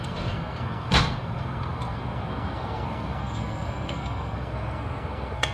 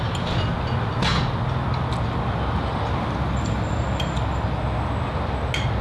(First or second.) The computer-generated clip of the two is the first